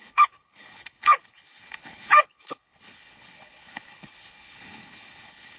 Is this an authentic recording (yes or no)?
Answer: no